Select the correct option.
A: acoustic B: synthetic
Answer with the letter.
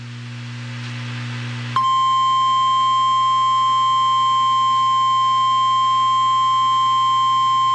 A